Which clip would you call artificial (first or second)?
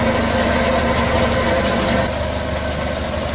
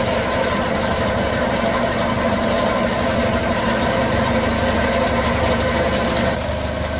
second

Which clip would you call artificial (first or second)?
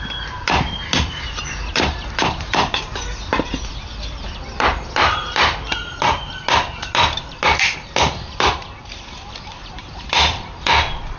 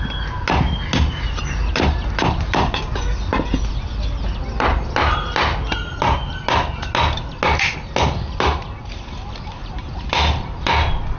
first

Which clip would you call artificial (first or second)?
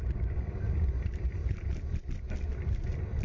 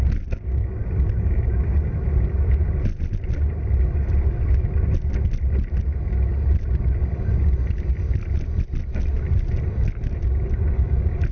first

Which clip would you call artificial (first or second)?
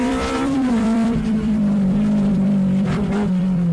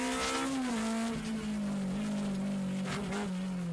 first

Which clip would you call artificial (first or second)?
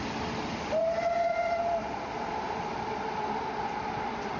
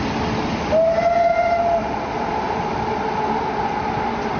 first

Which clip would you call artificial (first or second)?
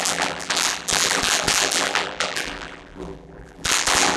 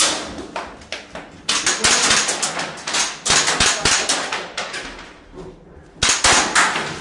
first